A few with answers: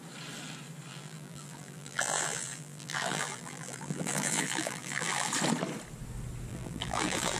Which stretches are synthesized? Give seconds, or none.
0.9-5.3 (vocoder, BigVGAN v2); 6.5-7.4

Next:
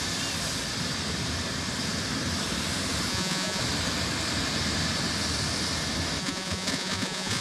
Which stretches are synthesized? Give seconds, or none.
3.1-3.6 (vocoder, Vocos); 6.2-7.4